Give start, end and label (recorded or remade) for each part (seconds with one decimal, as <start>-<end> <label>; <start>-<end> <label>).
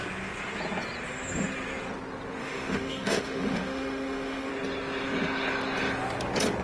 0.0-2.4 recorded; 2.4-4.5 remade; 4.5-6.6 recorded